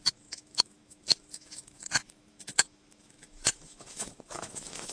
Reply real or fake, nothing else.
fake